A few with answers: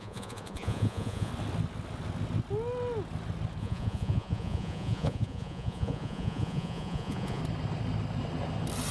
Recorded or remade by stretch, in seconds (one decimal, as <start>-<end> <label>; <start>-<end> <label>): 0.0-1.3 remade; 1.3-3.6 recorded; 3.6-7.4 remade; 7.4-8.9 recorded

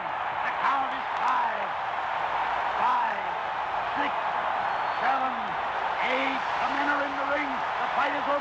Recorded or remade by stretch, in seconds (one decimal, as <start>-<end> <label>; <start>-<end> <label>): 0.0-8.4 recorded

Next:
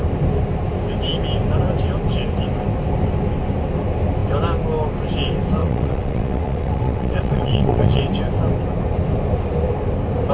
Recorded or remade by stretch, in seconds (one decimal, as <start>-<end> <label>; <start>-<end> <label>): 0.0-5.6 recorded; 5.6-8.0 remade; 8.0-10.3 recorded

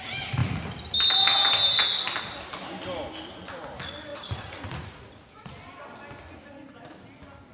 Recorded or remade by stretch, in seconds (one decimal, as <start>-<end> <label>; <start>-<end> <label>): 0.0-4.1 recorded; 4.1-5.5 remade; 5.5-7.5 recorded